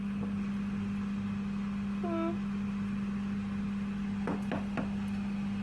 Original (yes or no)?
yes